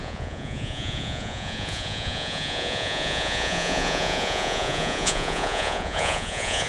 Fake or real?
fake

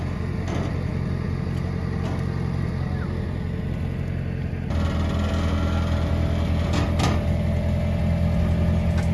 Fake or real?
real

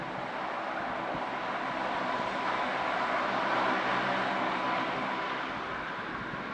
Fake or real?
real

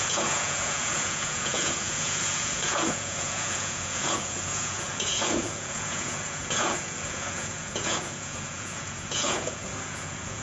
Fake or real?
fake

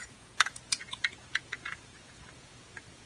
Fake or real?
fake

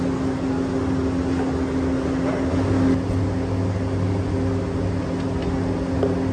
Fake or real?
real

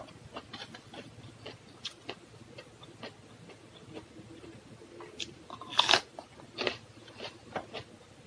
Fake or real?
real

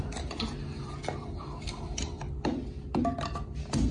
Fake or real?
real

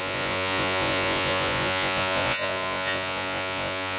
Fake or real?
fake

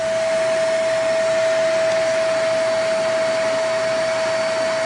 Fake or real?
real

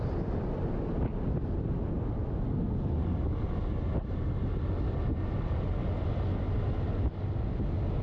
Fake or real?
real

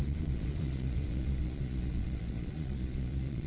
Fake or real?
fake